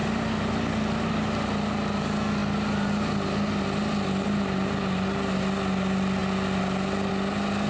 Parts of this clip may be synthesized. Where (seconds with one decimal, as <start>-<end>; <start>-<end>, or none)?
none